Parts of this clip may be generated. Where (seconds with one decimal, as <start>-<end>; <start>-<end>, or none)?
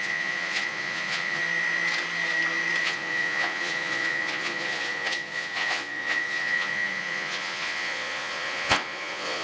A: 0.0-1.4; 2.8-9.4